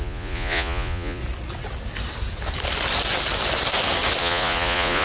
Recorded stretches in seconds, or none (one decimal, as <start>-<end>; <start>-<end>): 1.2-4.2